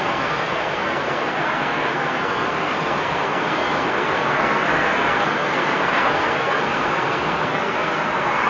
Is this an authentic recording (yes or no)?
no